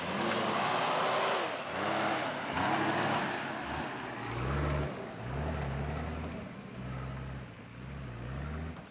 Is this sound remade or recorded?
recorded